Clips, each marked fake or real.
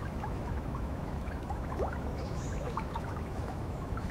fake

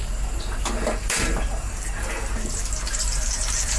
fake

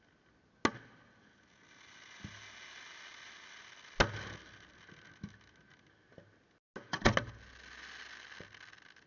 real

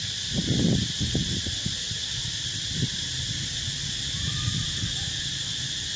fake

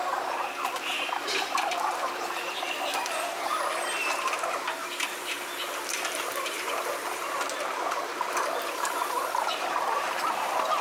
fake